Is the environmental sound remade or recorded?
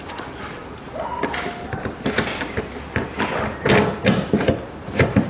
recorded